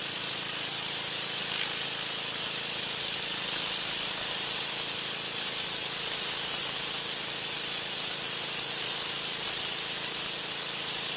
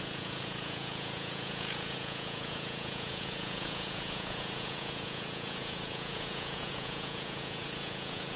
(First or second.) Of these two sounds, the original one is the first